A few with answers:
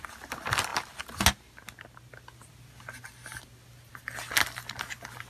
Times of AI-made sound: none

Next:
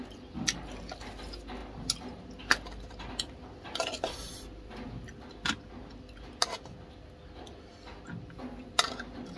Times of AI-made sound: none

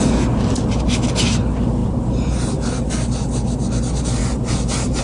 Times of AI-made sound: 1.8-2.9 (vocoder, BigVGAN v2); 4.2-5.0

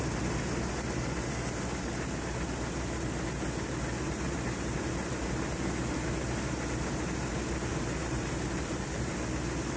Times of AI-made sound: 4.0-4.9 (vocoder, BigVGAN v2); 7.7-9.1

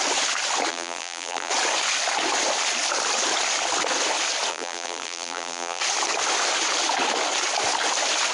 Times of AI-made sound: 0.7-1.5 (vocoder, BigVGAN v2); 4.5-5.8

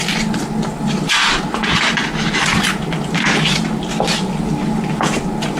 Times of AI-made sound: 1.6-2.8 (vocoder, BigVGAN v2)